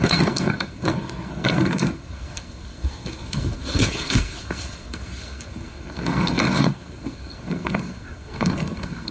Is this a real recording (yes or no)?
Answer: no